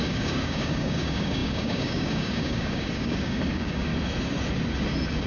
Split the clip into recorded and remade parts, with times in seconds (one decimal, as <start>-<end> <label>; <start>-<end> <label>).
0.0-3.9 remade; 3.9-5.3 recorded